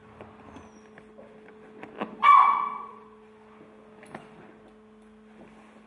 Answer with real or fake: real